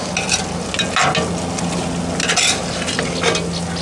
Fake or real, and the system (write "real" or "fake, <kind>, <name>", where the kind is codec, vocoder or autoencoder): real